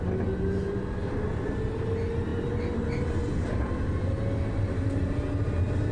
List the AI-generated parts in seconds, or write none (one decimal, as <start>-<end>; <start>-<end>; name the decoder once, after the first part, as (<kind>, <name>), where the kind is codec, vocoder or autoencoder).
none